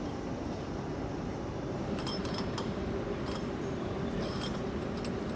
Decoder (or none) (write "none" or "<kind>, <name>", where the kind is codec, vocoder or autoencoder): vocoder, BigVGAN v2